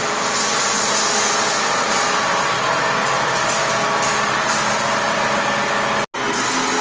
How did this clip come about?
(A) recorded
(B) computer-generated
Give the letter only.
A